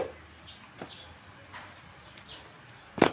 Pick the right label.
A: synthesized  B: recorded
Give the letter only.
B